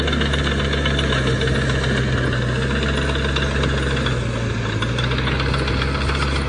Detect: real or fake real